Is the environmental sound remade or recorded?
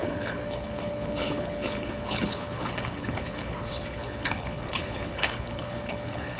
remade